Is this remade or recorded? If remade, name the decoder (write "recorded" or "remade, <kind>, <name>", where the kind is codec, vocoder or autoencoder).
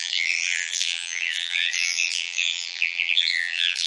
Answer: remade, vocoder, BigVGAN v2